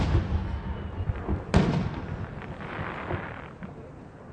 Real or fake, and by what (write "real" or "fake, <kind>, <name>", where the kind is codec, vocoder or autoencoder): real